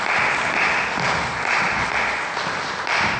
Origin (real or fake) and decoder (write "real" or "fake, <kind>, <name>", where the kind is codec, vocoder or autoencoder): real